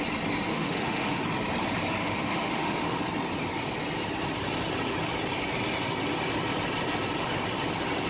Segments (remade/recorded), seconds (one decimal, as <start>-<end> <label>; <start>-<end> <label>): 0.0-0.5 recorded; 0.5-1.2 remade; 1.2-2.0 recorded; 2.0-3.0 remade; 3.0-8.1 recorded